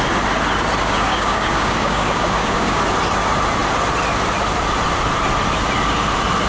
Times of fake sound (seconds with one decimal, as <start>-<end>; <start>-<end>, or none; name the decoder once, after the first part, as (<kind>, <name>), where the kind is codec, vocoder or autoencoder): 0.8-2.8 (codec, DAC)